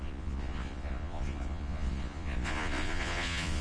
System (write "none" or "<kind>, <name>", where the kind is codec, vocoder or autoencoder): vocoder, Vocos